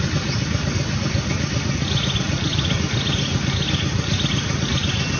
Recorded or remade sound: recorded